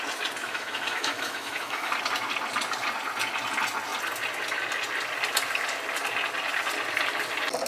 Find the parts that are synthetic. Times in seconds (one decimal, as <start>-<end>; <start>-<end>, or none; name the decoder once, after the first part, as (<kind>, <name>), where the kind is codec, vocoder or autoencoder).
0.4-1.9 (autoencoder, DAC-VAE)